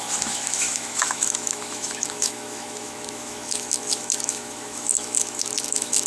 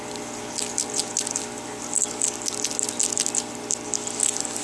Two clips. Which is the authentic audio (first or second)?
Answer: second